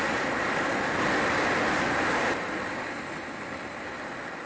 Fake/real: real